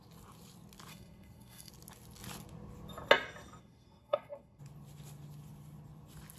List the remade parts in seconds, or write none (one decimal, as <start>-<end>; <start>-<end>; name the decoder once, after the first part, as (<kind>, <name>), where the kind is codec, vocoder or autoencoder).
0.9-1.7 (codec, SNAC); 3.6-4.6

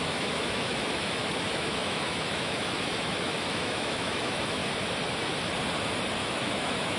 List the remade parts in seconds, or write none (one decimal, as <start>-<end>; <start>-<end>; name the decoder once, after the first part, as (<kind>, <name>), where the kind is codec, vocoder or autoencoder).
0.0-4.6 (autoencoder, DAC-VAE); 6.1-7.0

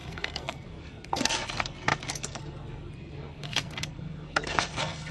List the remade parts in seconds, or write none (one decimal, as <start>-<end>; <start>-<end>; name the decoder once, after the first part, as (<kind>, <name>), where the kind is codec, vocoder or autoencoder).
0.0-5.1 (codec, SNAC)